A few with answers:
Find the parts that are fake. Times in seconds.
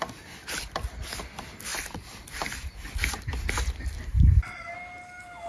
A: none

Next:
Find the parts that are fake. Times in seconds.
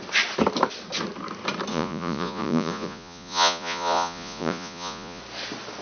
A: 1.7-5.2 (vocoder, Vocos)